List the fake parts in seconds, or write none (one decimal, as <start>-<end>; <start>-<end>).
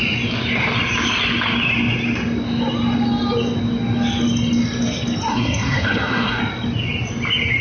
5.3-6.4